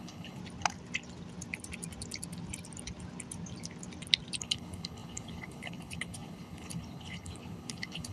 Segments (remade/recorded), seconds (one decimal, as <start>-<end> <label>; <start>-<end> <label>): 0.0-0.4 remade; 0.4-4.4 recorded; 4.4-8.1 remade